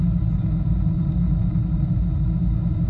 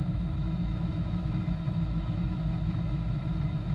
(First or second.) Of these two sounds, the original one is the first